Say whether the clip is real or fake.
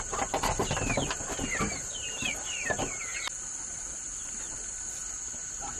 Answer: real